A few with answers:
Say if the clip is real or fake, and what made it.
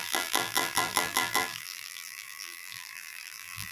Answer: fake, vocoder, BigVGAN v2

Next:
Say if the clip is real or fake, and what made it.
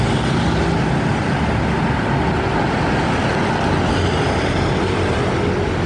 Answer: real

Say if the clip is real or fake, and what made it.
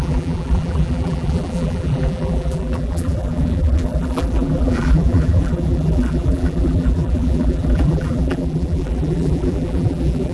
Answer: fake, vocoder, BigVGAN v2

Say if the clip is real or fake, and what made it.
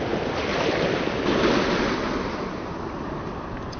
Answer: real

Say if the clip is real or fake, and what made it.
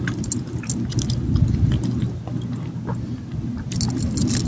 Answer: real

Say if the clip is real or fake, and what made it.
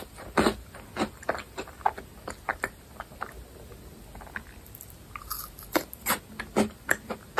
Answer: real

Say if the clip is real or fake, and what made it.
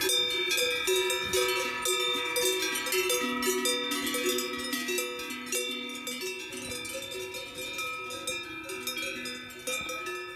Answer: real